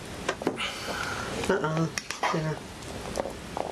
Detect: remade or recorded recorded